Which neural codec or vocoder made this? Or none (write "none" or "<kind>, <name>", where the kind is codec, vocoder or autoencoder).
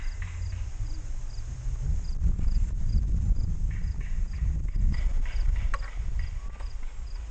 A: none